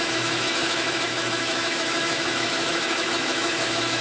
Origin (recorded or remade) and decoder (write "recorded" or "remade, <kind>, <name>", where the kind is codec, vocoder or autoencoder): remade, autoencoder, DAC-VAE